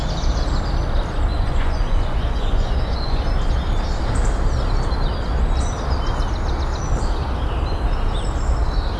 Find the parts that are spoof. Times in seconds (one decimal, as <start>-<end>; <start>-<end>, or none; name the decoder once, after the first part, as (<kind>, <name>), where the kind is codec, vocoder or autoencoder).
1.3-3.2 (vocoder, Vocos)